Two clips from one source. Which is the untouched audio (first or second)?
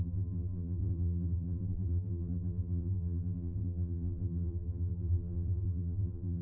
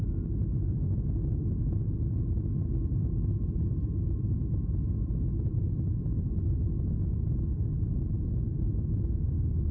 second